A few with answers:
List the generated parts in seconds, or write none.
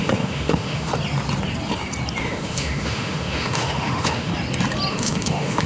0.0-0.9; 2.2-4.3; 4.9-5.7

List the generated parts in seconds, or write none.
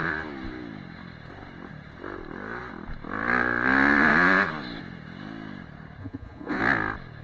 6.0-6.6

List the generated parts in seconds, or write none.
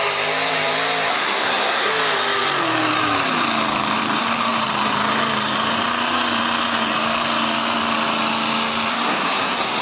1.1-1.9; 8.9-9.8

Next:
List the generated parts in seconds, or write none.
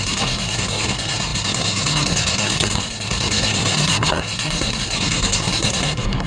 0.0-6.3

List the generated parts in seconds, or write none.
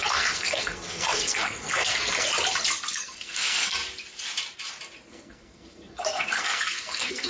0.0-2.3; 2.9-3.8; 5.1-7.3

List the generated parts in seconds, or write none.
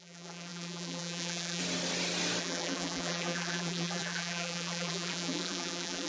0.0-1.6; 2.4-6.1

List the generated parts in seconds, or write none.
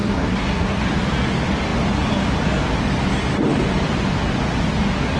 0.0-0.8